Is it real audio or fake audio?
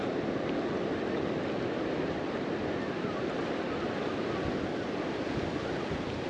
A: real